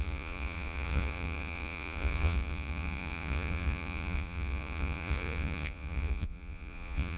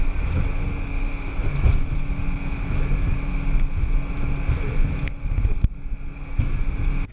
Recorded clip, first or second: second